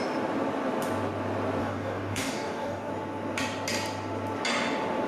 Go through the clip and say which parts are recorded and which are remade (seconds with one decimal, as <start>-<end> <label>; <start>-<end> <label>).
0.0-1.6 recorded; 1.6-2.9 remade; 2.9-5.1 recorded